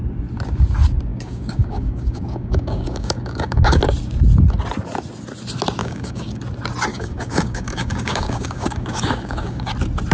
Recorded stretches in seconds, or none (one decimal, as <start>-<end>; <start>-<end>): 0.0-1.1; 3.8-5.8; 6.4-6.9; 9.7-10.1

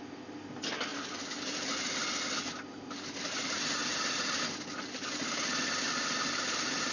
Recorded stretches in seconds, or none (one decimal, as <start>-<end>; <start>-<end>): 0.0-6.9

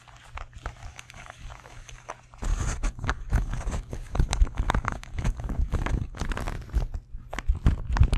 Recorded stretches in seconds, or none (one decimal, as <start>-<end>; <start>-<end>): 0.0-0.9; 2.1-2.5; 6.2-8.2